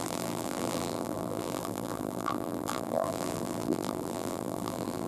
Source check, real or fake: fake